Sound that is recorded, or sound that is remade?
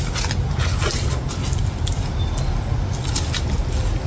recorded